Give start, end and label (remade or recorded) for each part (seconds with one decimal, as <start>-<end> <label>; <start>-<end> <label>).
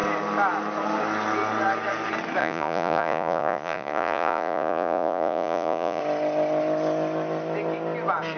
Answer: 0.0-2.4 recorded; 2.4-6.0 remade; 6.0-8.4 recorded